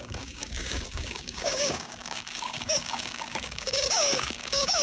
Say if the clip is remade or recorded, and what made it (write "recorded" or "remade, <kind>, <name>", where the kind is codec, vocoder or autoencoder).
remade, codec, DAC